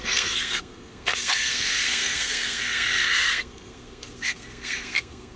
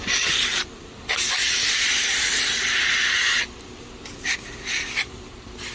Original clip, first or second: second